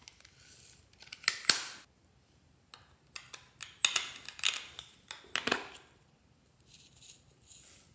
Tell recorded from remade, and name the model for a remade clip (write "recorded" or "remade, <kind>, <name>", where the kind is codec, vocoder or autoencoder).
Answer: recorded